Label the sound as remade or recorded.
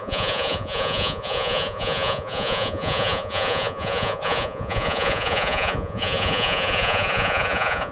remade